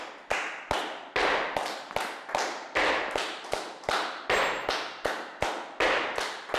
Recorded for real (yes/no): yes